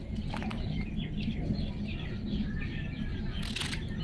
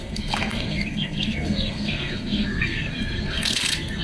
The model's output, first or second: second